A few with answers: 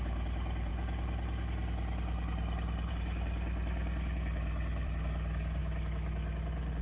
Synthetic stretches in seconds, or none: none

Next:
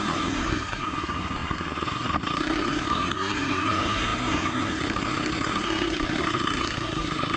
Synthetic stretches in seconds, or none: 0.0-7.4 (codec, SNAC)

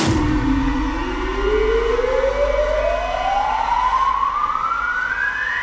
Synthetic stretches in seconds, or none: none

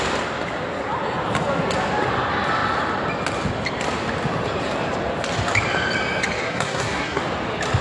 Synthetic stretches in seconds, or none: 6.4-7.2 (codec, SNAC)

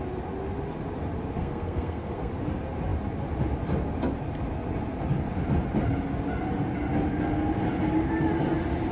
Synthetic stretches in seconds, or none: 1.4-2.3 (codec, SNAC)

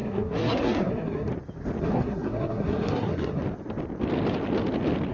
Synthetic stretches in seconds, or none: 0.0-1.3 (codec, SNAC); 1.8-3.4

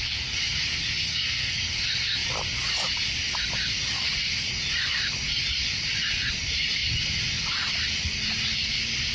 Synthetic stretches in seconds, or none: 1.1-1.7 (codec, SNAC)